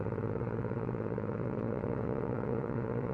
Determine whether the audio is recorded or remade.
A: remade